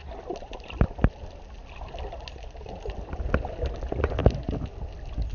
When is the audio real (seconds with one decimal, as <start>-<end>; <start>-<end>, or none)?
0.0-5.3